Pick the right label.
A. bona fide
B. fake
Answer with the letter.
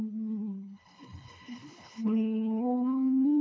B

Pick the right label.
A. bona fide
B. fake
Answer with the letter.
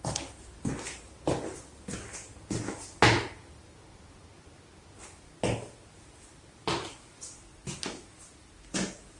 A